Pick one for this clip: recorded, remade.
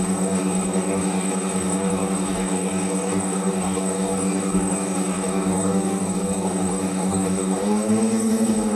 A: remade